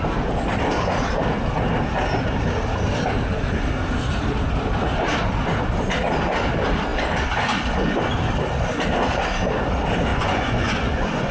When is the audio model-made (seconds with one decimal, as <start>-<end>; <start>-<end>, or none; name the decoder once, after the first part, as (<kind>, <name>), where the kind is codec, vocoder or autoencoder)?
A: 10.1-11.3 (vocoder, Vocos)